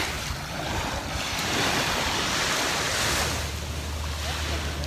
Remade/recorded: recorded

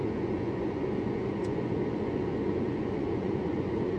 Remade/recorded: remade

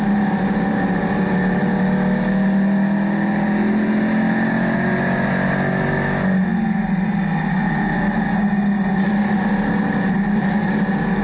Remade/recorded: recorded